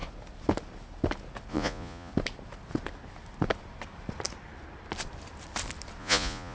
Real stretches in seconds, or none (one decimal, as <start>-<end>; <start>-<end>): 0.0-1.5; 2.1-6.0